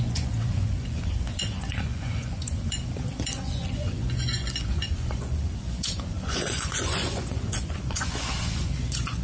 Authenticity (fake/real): fake